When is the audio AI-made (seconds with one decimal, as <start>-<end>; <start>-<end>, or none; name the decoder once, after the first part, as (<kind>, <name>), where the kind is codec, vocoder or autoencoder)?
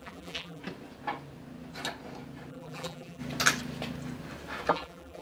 0.0-0.6 (vocoder, BigVGAN v2); 2.5-3.2; 4.7-5.2